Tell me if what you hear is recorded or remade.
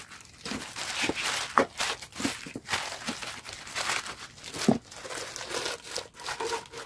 recorded